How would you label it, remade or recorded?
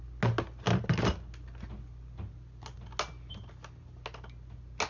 recorded